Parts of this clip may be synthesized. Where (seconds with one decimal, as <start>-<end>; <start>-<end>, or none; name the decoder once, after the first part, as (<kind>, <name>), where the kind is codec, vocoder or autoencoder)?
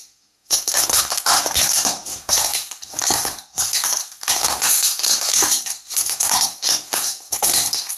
0.0-8.0 (codec, SNAC)